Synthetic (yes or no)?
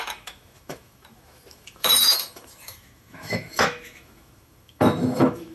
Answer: yes